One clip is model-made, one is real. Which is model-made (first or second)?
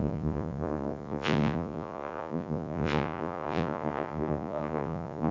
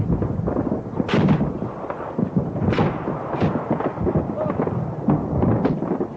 first